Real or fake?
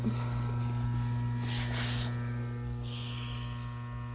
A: real